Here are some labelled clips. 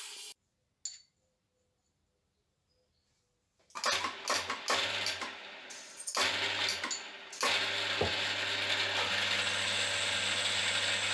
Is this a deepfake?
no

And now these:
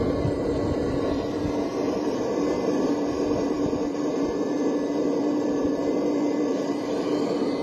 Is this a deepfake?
yes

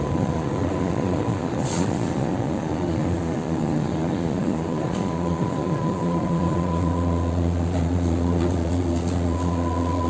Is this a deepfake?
yes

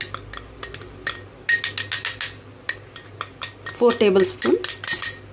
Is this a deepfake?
no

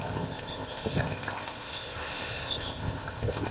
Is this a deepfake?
yes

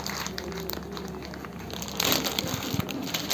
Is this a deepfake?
yes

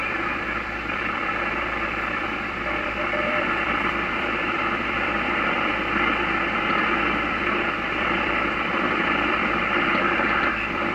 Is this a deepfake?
yes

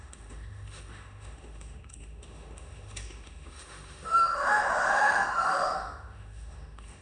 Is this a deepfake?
yes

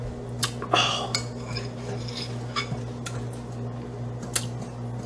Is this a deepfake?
no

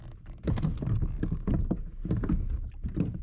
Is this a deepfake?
no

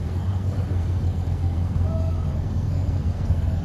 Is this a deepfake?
yes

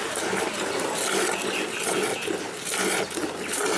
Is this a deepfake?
no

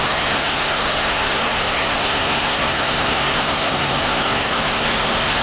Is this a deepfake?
yes